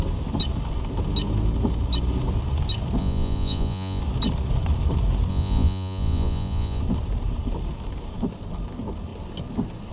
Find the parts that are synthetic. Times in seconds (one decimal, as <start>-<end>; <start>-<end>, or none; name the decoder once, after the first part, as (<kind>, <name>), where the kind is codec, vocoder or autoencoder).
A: 3.0-4.0 (vocoder, Vocos); 5.3-6.8

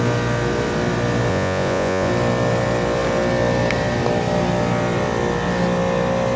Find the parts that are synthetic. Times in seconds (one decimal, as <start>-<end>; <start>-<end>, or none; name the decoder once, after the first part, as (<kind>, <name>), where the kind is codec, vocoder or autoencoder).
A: 1.3-2.1 (vocoder, Vocos)

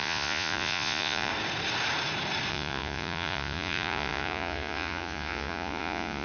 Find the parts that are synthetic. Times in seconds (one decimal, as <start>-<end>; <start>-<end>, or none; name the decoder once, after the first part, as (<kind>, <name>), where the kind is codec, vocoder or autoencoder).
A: 0.0-1.3 (vocoder, Vocos); 2.5-6.2

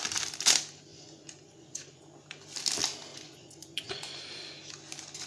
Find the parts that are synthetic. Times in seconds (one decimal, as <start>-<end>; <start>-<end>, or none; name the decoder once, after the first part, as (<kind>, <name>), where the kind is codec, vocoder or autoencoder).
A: 0.9-2.0 (vocoder, Vocos); 3.1-4.2

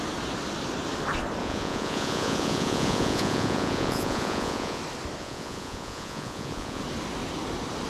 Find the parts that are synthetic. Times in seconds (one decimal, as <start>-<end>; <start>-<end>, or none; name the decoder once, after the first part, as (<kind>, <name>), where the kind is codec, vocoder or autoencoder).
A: 1.4-4.8 (vocoder, Vocos); 5.2-6.8

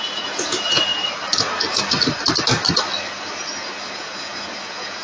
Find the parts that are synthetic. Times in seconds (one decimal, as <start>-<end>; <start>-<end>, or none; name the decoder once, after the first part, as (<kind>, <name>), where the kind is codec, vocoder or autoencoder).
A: 0.0-0.9 (vocoder, Vocos); 3.9-5.0

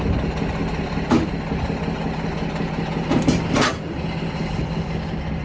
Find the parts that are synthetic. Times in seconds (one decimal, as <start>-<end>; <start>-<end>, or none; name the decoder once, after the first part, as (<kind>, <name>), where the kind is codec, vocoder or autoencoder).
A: none